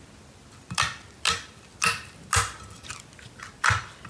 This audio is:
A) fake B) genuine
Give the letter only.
B